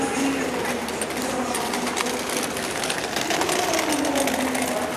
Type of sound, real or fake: real